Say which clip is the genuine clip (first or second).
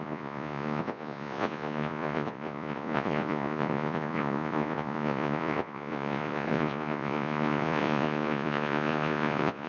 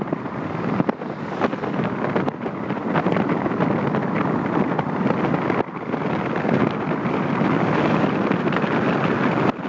second